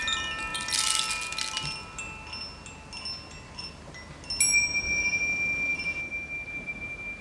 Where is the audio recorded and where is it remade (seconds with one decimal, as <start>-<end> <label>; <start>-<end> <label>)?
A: 0.0-7.2 recorded